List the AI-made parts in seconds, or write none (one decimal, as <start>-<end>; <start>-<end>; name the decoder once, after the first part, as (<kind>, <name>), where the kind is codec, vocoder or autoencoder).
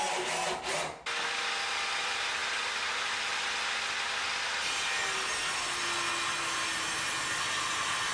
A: none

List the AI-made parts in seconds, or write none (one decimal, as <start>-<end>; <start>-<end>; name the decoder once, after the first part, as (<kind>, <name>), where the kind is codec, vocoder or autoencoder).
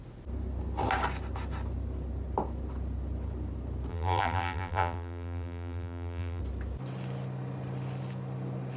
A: 3.9-6.4 (vocoder, BigVGAN v2)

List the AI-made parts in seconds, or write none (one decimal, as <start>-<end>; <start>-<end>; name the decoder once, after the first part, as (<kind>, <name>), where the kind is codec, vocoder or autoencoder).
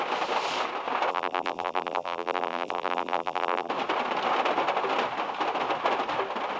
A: 1.1-3.7 (vocoder, BigVGAN v2)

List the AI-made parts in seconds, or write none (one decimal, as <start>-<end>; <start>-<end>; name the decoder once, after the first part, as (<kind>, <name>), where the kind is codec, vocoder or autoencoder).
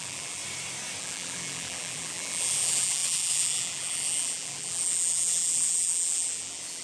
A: 0.0-0.4 (vocoder, BigVGAN v2); 1.0-6.8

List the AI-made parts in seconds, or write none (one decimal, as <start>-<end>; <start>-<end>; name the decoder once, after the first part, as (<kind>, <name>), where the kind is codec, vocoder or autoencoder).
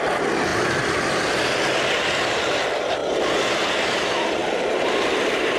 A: 3.0-3.7 (vocoder, BigVGAN v2); 4.4-5.6